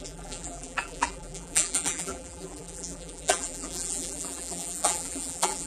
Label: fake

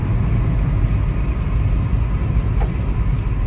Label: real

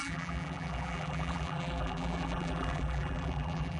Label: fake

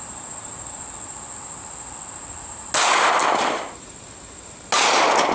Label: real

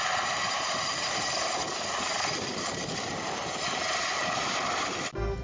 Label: fake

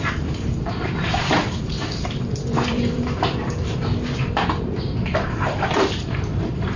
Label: fake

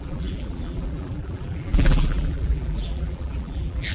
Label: fake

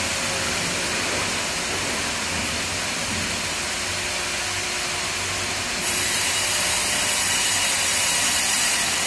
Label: real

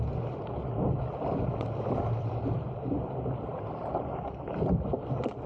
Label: fake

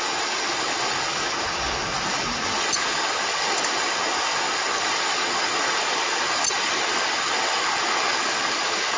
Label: real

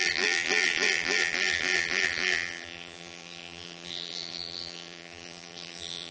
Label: fake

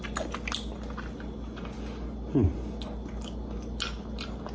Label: real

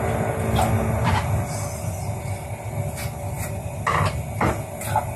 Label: real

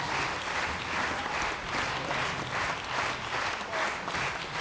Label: real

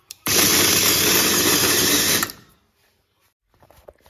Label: fake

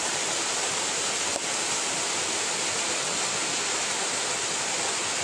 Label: real